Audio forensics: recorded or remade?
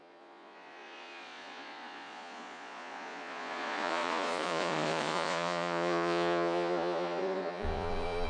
remade